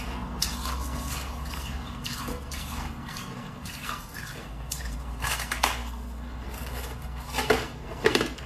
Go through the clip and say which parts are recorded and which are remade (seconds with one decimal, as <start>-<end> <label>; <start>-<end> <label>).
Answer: 0.0-8.5 remade